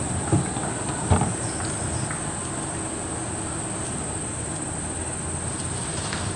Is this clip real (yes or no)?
yes